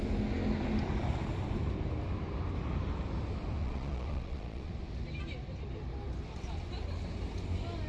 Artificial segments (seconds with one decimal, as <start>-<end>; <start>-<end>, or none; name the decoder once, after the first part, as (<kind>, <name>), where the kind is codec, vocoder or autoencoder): 3.6-4.7 (vocoder, Vocos)